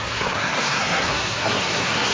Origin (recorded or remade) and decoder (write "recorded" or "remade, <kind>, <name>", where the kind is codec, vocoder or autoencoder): remade, codec, SNAC